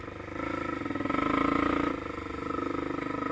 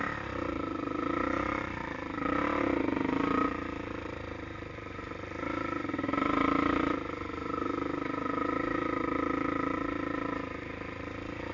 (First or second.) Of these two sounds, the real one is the first